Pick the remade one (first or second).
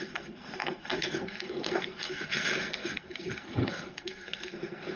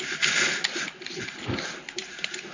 first